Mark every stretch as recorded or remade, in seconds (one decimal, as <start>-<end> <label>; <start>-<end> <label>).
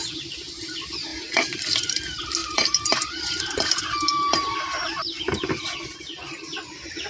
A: 0.0-1.1 recorded; 1.1-2.0 remade; 2.0-2.4 recorded; 2.4-6.0 remade; 6.0-7.1 recorded